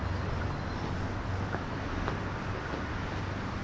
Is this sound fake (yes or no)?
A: no